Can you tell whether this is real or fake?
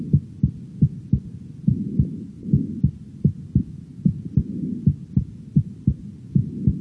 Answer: real